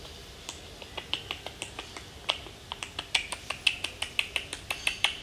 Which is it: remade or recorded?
recorded